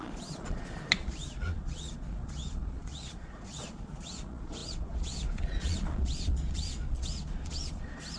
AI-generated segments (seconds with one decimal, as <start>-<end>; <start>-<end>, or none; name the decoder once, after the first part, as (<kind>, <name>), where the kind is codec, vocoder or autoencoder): 0.0-8.2 (vocoder, Vocos)